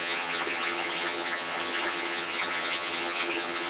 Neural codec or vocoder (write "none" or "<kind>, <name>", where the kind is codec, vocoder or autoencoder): vocoder, HiFi-GAN